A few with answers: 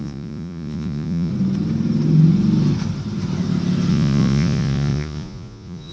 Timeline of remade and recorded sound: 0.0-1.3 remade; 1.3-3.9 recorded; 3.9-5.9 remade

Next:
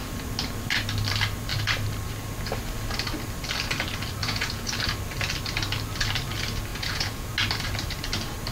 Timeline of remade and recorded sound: 0.0-4.2 recorded; 4.2-4.7 remade; 4.7-6.7 recorded; 6.7-7.3 remade; 7.3-8.5 recorded

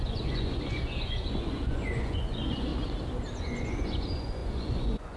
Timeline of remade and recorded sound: 0.0-2.7 remade; 2.7-3.4 recorded; 3.4-5.2 remade